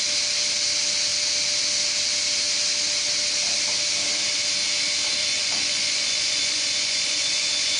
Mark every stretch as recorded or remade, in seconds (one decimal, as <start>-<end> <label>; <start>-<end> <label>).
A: 0.0-5.2 recorded; 5.2-7.8 remade